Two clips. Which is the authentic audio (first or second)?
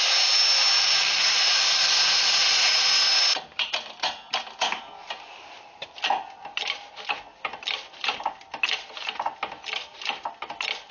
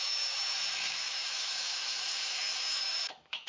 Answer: first